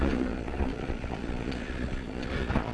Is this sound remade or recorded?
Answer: remade